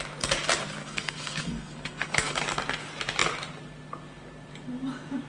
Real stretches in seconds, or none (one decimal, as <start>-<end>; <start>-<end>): 0.0-0.8; 2.4-5.3